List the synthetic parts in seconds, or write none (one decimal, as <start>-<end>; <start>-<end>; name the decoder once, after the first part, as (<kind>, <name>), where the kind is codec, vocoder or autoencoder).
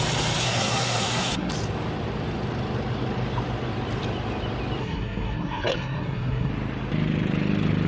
0.4-1.5 (codec, SNAC); 4.8-6.5